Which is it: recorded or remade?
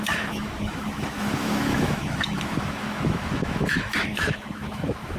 remade